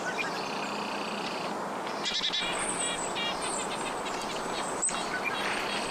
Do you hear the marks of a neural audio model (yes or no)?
no